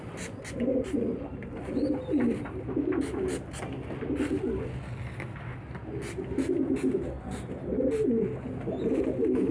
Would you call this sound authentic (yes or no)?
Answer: yes